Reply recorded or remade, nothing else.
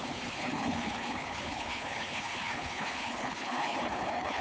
remade